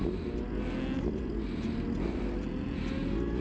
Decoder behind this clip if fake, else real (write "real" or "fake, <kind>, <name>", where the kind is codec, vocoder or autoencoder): real